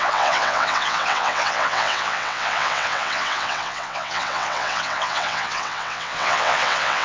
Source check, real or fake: fake